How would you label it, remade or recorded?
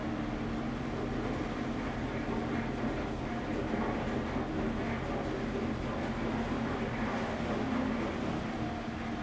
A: recorded